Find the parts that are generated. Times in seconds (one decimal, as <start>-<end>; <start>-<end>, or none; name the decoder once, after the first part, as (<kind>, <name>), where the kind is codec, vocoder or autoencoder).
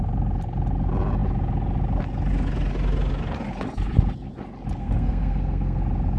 4.8-5.8 (codec, SNAC)